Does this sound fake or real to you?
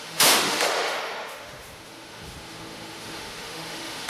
fake